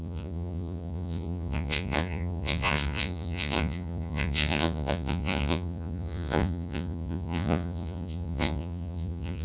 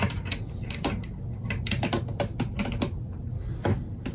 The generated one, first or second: first